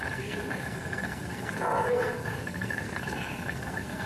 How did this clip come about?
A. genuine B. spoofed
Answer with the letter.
B